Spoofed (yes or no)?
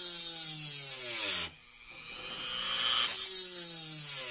no